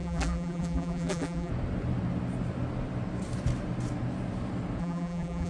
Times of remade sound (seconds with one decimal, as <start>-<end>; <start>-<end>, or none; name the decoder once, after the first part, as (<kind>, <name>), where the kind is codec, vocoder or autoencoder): 0.0-1.5 (vocoder, BigVGAN v2); 4.8-5.5